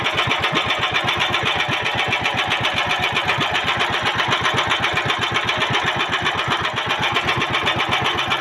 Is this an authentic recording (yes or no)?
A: yes